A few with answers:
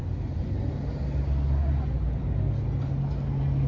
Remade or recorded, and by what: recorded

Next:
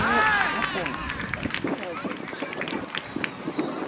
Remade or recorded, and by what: recorded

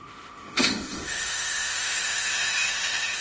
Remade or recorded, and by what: remade, autoencoder, DAC-VAE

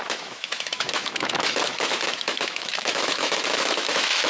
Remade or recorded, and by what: remade, autoencoder, DAC-VAE